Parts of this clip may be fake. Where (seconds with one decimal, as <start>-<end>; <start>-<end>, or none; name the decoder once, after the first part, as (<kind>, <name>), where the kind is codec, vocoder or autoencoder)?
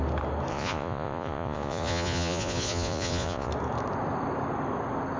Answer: 0.5-3.5 (vocoder, Vocos)